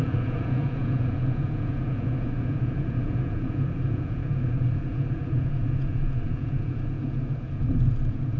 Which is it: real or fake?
fake